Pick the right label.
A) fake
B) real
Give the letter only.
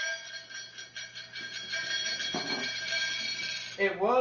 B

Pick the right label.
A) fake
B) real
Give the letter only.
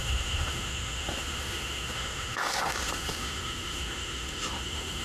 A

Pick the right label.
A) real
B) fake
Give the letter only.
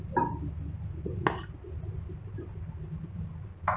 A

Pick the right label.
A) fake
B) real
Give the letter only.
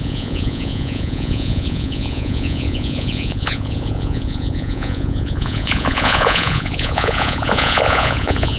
A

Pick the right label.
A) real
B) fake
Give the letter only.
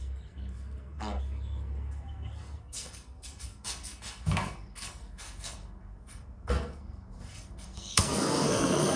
B